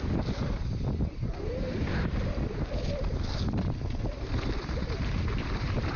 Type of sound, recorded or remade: recorded